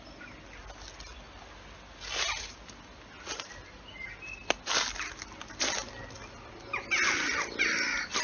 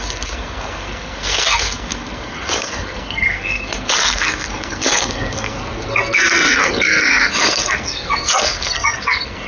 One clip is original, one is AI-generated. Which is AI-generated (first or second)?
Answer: second